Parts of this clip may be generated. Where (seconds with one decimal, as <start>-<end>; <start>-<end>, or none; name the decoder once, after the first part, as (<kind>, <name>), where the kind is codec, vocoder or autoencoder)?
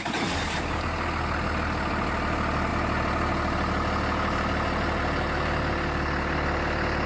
none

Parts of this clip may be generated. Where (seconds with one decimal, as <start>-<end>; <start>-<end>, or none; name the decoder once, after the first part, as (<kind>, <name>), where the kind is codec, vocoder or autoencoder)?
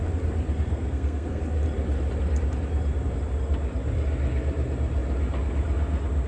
0.7-1.4 (codec, SNAC)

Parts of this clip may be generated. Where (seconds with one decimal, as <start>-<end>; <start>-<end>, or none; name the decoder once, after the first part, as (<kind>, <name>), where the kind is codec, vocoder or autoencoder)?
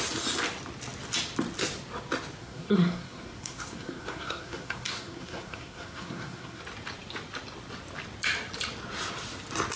2.4-6.6 (codec, SNAC)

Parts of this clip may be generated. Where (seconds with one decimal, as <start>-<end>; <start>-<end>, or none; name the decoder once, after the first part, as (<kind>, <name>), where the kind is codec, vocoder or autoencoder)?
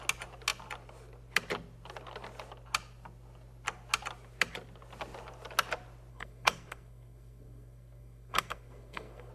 6.1-9.3 (codec, SNAC)